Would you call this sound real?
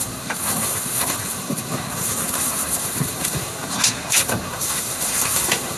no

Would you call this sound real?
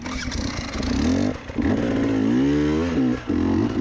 yes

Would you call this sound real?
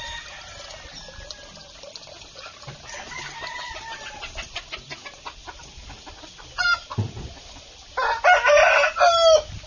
yes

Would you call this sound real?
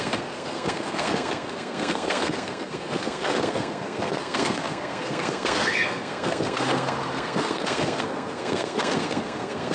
no